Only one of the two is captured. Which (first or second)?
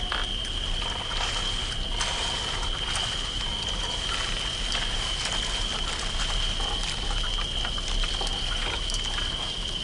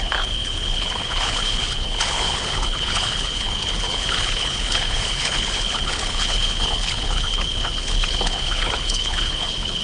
first